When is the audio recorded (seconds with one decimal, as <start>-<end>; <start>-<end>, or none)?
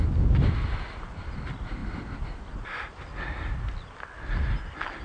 0.0-5.0